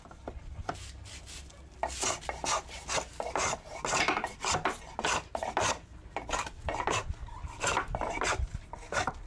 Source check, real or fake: real